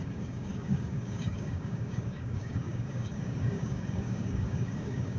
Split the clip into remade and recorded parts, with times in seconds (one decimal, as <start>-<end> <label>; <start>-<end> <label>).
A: 0.0-5.2 remade

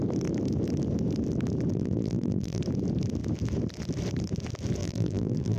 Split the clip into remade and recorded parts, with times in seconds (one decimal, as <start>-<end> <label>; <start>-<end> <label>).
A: 0.0-1.7 recorded; 1.7-2.6 remade; 2.6-4.8 recorded; 4.8-5.6 remade

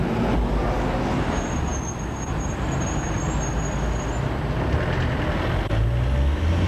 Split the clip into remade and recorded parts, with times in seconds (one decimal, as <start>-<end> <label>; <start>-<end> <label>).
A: 0.0-6.7 recorded

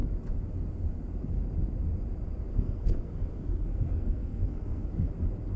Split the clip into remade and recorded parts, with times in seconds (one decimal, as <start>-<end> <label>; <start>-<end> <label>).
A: 0.0-2.5 recorded; 2.5-5.1 remade; 5.1-5.6 recorded

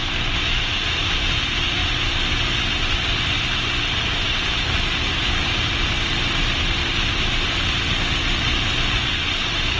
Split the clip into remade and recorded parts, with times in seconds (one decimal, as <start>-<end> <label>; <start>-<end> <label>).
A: 0.0-9.8 recorded

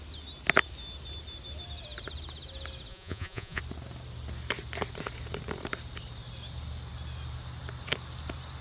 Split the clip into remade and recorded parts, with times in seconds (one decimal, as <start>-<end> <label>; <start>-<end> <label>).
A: 0.0-2.9 recorded; 2.9-3.6 remade; 3.6-8.6 recorded

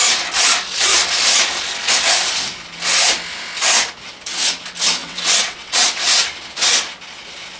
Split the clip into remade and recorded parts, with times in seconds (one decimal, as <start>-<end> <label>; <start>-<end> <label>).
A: 0.0-5.0 recorded; 5.0-6.0 remade; 6.0-7.6 recorded